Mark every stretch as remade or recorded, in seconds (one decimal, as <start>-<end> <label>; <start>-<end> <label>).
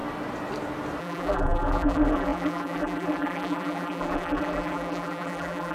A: 0.0-1.0 recorded; 1.0-5.7 remade